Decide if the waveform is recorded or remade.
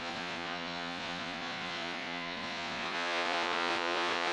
remade